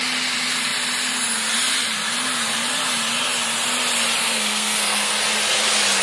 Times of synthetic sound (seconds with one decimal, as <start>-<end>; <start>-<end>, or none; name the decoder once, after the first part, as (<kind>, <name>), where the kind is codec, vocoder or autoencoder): 4.2-5.1 (codec, SNAC)